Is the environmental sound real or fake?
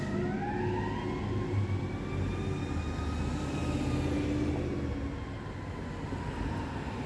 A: real